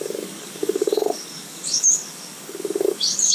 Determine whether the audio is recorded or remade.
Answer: remade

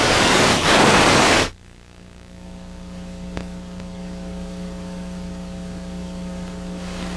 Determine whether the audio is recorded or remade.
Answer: remade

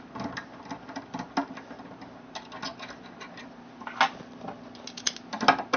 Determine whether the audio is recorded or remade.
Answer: recorded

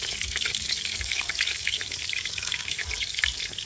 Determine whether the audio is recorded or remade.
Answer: remade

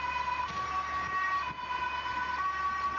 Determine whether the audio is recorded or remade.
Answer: recorded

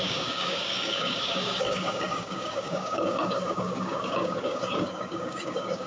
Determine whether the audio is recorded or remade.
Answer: remade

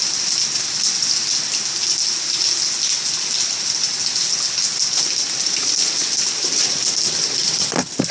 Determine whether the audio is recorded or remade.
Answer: recorded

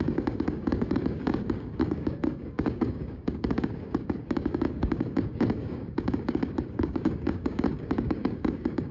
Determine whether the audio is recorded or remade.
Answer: remade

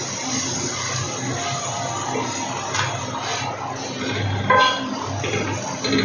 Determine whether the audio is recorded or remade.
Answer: recorded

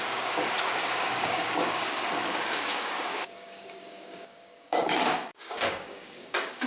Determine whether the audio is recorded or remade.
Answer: remade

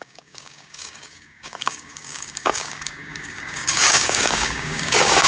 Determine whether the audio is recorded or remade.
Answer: remade